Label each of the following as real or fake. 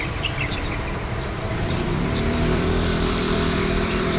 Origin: fake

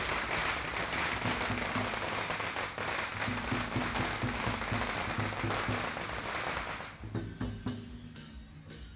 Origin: real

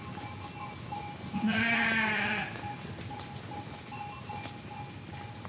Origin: real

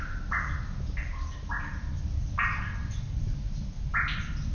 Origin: real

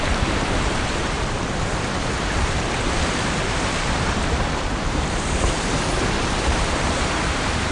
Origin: fake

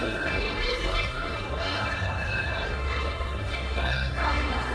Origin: fake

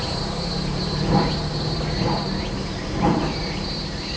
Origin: fake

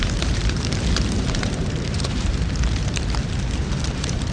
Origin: fake